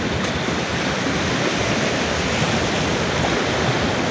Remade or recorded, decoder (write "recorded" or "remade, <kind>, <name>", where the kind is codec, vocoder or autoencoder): recorded